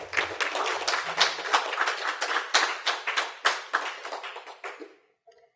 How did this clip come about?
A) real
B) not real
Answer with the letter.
A